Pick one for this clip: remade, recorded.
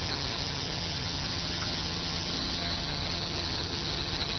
remade